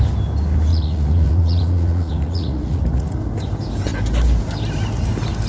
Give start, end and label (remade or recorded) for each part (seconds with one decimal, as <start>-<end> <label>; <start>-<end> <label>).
0.0-0.7 recorded; 0.7-3.2 remade; 3.2-5.5 recorded